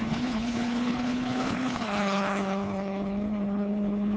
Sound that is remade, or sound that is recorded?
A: remade